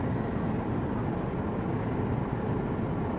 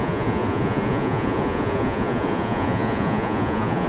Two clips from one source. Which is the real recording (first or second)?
first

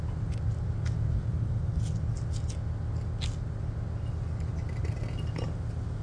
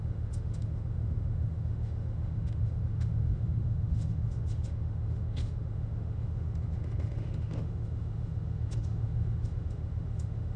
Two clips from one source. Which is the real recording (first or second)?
first